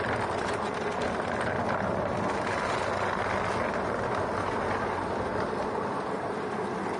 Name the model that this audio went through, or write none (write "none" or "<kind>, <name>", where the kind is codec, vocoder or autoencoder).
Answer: none